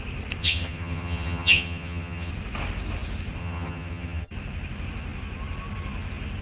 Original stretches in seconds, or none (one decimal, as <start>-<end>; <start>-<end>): 0.0-0.4; 2.3-3.4; 4.3-6.4